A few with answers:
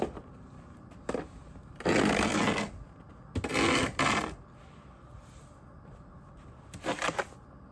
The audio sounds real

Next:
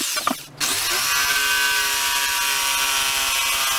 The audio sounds real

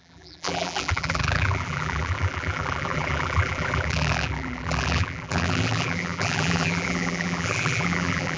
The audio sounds fake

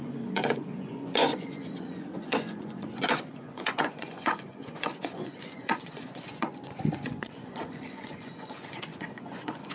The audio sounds fake